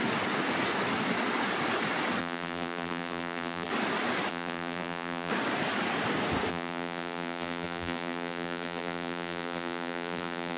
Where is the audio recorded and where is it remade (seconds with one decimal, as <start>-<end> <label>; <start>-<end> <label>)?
0.0-2.2 recorded; 2.2-3.7 remade; 3.7-4.3 recorded; 4.3-5.3 remade; 5.3-6.5 recorded; 6.5-10.6 remade